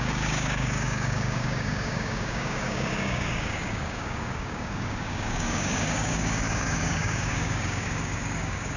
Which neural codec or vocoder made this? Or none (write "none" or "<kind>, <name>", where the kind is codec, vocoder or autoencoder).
codec, DAC